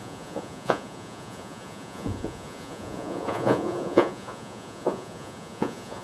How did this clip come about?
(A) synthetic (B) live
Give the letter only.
A